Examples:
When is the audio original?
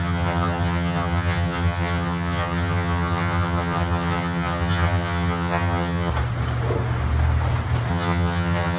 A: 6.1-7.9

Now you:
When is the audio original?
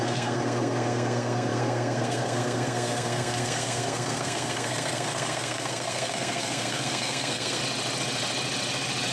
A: 7.6-9.1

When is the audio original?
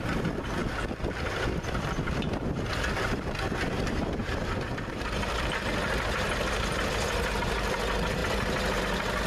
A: 0.0-4.0; 6.5-9.3